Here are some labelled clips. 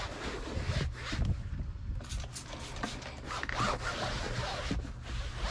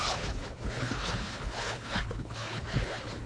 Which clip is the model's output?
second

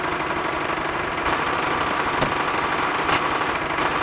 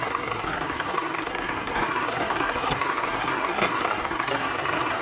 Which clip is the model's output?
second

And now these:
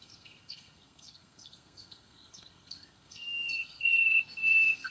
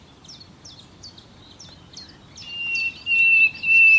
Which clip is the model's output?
first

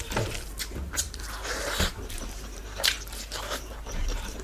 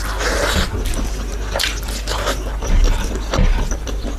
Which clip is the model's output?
first